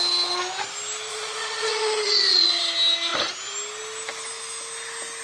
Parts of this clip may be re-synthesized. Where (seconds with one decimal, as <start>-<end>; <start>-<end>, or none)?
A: 1.1-2.6